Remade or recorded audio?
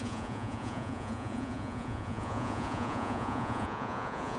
remade